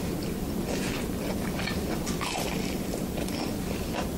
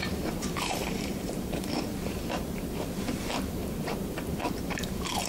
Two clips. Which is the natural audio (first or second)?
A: first